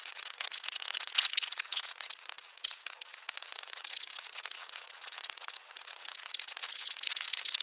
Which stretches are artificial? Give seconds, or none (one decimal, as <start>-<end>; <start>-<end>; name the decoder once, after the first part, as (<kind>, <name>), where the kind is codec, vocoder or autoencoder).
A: 0.0-7.6 (vocoder, WaveNeXt)

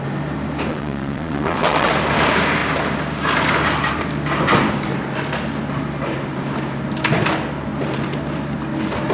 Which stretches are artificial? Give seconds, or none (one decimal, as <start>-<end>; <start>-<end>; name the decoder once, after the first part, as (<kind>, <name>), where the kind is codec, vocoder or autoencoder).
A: 0.7-1.9 (vocoder, WaveNeXt)